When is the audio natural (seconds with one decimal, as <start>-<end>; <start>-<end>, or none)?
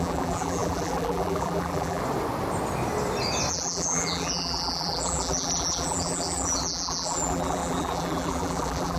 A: 2.0-3.5